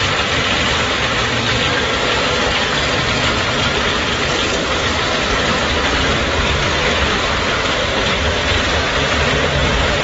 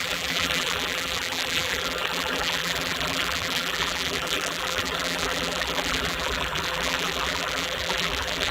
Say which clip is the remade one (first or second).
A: second